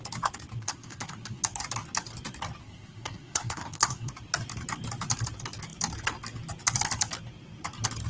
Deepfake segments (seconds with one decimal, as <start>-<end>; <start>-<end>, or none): 0.6-1.4; 2.6-4.1